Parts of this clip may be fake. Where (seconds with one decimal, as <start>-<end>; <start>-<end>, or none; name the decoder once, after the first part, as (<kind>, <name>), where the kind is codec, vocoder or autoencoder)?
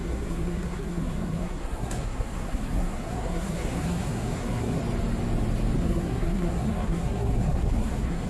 0.0-4.8 (codec, SNAC); 5.8-8.3